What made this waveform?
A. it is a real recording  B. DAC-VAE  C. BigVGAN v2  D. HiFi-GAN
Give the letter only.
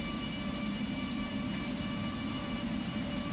C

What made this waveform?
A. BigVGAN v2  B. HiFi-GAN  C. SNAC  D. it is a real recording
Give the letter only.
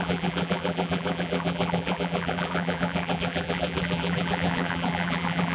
A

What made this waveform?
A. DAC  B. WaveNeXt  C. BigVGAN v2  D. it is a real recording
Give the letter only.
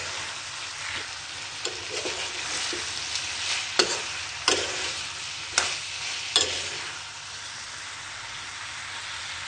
D